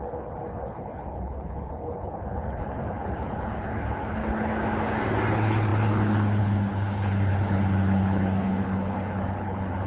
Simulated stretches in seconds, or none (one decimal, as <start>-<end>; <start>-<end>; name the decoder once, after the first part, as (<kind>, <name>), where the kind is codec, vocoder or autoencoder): 0.0-4.5 (codec, HILCodec); 5.3-9.9